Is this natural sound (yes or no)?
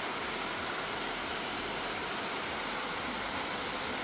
yes